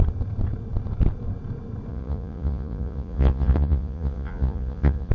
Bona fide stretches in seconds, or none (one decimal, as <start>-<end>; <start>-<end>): 0.0-1.9